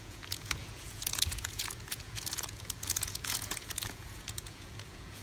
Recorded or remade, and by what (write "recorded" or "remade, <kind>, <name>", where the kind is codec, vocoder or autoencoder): remade, vocoder, Vocos